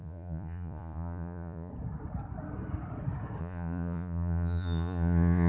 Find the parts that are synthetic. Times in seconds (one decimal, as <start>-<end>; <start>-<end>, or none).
0.0-1.7; 3.4-5.5